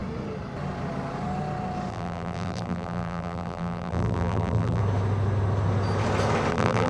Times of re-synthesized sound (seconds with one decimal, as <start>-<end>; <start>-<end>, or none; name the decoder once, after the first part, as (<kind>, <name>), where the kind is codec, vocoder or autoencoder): 1.9-4.8 (vocoder, BigVGAN v2); 6.5-6.9